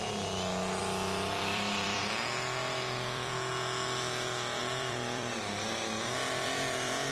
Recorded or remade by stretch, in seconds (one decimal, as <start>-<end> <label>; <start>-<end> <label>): 0.0-0.8 recorded; 0.8-2.0 remade; 2.0-2.6 recorded; 2.6-3.3 remade; 3.3-4.6 recorded; 4.6-5.8 remade; 5.8-6.2 recorded; 6.2-7.1 remade